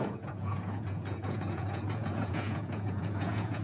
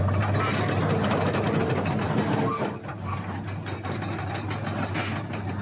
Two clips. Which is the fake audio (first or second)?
first